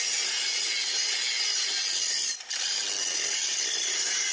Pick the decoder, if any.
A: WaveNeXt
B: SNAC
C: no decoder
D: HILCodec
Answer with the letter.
C